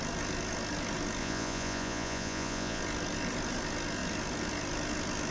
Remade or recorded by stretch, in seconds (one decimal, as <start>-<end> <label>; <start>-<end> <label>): 0.0-1.2 recorded; 1.2-2.8 remade; 2.8-5.3 recorded